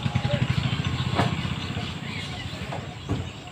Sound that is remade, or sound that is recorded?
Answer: recorded